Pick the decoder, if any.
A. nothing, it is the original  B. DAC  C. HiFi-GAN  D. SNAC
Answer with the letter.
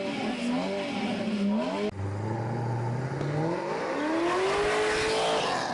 A